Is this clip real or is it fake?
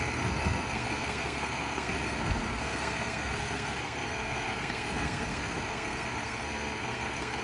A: fake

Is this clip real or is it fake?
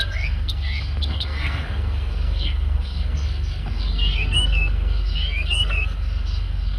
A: fake